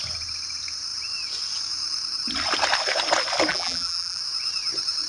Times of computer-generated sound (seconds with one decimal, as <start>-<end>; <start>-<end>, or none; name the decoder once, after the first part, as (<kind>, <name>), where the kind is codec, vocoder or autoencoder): 3.5-4.2 (vocoder, BigVGAN v2)

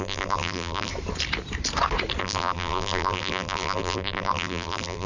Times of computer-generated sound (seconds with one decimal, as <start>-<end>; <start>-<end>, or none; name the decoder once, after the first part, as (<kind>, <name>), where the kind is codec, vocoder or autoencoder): 0.0-0.9 (vocoder, BigVGAN v2); 2.2-5.1

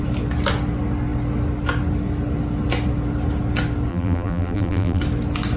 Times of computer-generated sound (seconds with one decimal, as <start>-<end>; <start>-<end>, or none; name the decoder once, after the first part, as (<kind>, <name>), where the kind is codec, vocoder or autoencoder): 3.9-5.0 (vocoder, BigVGAN v2)

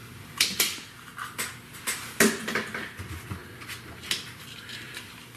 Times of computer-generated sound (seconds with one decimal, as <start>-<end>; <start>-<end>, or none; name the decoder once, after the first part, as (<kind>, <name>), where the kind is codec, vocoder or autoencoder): 0.0-0.6 (vocoder, BigVGAN v2); 1.1-2.5; 3.4-5.4